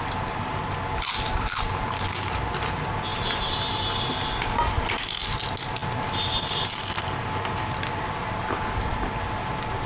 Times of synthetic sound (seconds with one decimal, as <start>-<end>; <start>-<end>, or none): none